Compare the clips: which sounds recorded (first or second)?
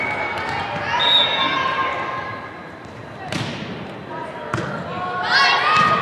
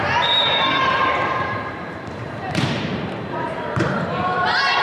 first